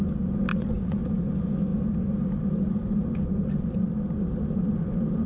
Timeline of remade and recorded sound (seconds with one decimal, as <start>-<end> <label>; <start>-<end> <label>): 0.0-0.5 recorded; 0.5-1.0 remade; 1.0-5.3 recorded